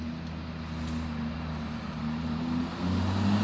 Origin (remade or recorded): recorded